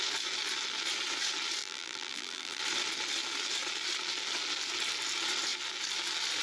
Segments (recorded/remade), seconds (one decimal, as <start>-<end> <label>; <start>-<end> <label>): 0.0-1.6 recorded; 1.6-2.6 remade; 2.6-6.4 recorded